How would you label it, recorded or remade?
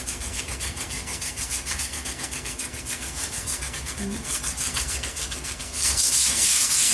remade